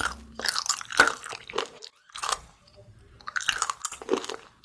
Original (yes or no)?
yes